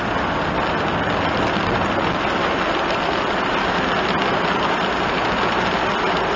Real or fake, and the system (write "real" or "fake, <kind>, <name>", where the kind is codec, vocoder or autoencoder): real